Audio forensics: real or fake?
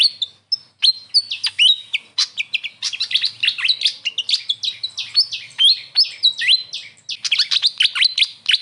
real